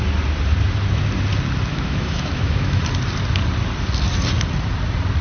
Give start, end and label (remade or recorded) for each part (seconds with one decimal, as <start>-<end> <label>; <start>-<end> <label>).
0.0-1.7 recorded; 1.7-2.8 remade; 2.8-5.2 recorded